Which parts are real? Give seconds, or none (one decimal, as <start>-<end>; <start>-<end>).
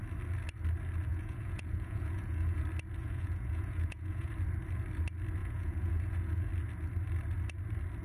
0.0-1.1; 2.6-3.0; 4.3-5.4; 6.5-8.0